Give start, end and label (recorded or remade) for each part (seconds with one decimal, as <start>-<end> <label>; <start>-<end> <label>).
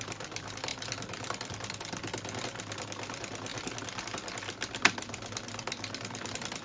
0.0-6.6 recorded